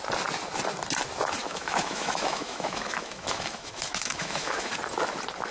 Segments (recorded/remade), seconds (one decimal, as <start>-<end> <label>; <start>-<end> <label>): 0.0-1.4 recorded; 1.4-4.7 remade; 4.7-5.5 recorded